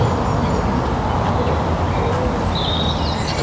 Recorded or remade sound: recorded